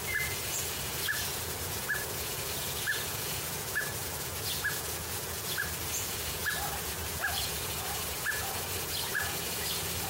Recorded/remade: remade